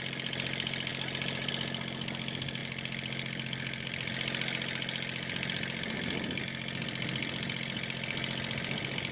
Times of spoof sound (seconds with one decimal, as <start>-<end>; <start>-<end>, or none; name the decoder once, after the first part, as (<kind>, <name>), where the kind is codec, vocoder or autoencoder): none